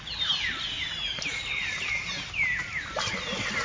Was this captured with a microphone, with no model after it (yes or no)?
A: yes